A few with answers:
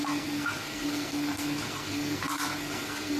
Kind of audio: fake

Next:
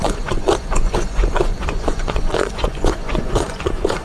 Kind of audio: fake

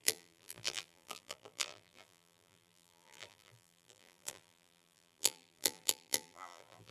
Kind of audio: fake